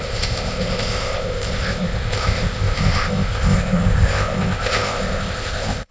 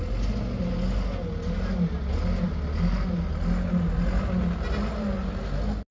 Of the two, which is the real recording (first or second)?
second